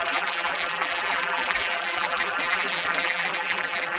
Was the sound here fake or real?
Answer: fake